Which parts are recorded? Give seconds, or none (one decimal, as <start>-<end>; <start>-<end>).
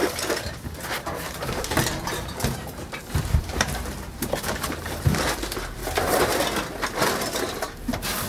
5.8-8.3